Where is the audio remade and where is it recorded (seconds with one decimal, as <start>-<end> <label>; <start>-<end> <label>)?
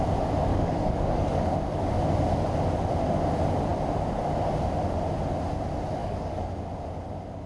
0.0-0.5 recorded; 0.5-2.0 remade; 2.0-6.0 recorded; 6.0-6.5 remade; 6.5-7.5 recorded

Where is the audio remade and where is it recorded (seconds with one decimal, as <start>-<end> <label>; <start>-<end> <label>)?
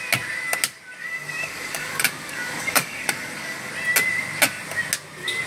0.0-1.0 recorded; 1.0-3.7 remade; 3.7-5.5 recorded